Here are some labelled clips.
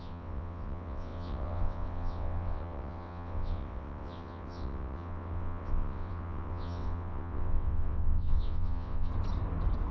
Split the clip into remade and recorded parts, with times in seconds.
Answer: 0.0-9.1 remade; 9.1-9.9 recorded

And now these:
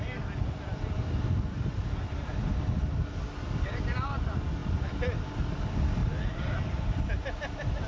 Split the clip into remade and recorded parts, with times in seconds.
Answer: 0.0-7.9 recorded

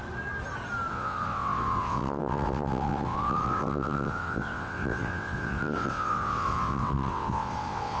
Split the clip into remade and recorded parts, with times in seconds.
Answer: 0.0-0.9 recorded; 0.9-8.0 remade